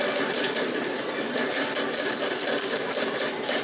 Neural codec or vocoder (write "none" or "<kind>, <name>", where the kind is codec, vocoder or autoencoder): vocoder, BigVGAN v2